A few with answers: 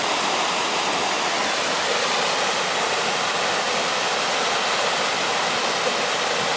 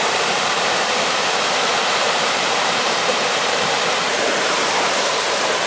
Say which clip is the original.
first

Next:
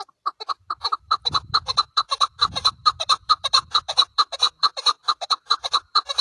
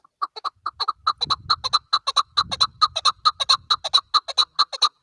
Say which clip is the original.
second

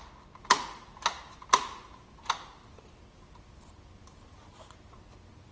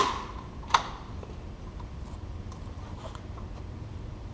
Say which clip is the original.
first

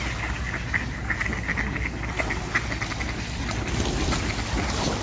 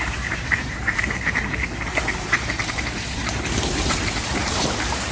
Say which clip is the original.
first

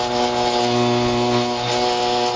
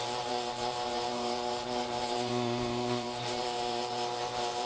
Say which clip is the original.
first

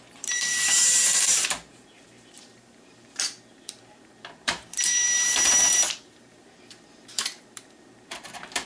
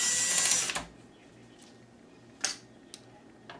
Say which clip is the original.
second